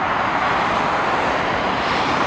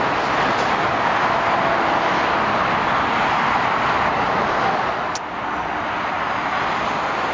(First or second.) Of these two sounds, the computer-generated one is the first